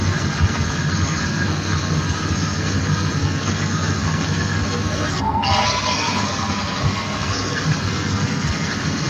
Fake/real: fake